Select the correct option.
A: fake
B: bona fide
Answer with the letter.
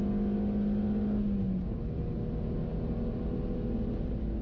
B